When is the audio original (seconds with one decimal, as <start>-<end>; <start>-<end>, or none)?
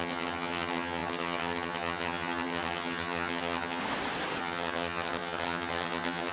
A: 3.8-4.4